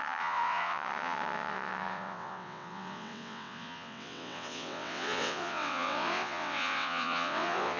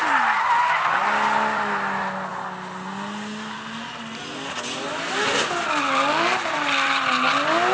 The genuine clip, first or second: second